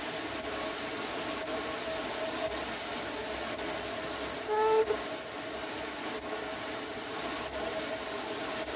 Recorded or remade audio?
recorded